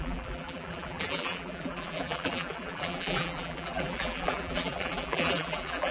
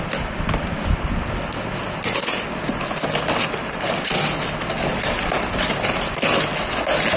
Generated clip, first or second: first